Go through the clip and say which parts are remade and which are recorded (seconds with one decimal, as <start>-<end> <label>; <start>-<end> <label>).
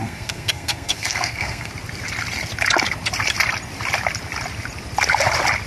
0.0-1.7 remade; 1.7-5.7 recorded